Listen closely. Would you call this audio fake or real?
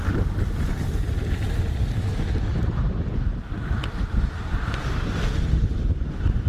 real